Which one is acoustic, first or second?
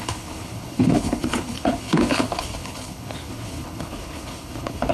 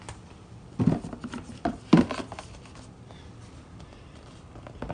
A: second